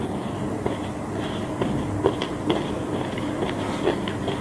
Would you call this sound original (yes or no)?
yes